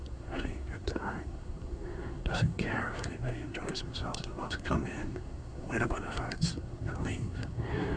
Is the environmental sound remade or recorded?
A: remade